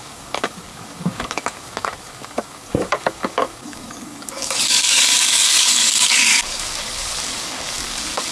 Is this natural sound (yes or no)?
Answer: no